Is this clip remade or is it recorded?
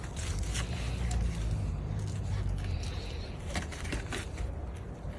recorded